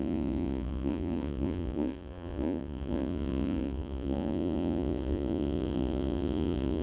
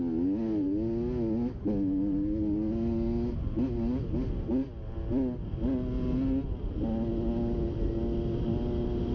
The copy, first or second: first